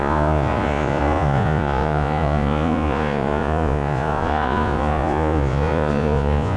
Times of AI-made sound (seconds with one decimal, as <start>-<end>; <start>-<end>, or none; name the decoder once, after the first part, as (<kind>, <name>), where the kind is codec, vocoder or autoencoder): 0.0-6.6 (vocoder, Vocos)